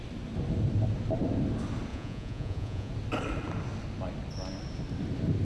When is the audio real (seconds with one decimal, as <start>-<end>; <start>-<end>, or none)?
0.0-1.9; 2.9-5.4